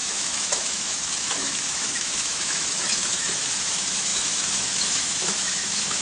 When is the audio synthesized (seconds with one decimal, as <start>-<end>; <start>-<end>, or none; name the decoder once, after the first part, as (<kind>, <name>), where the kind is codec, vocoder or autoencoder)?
0.0-6.0 (autoencoder, DAC-VAE)